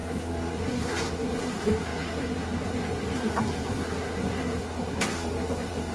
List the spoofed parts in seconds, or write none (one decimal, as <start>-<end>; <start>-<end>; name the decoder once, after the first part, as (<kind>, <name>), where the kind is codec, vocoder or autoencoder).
0.0-5.9 (codec, SNAC)